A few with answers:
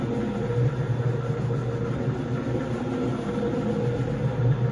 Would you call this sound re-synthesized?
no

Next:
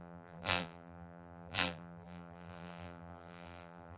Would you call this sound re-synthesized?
yes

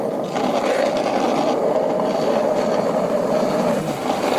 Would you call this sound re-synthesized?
no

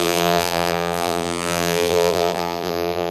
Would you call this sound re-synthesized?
yes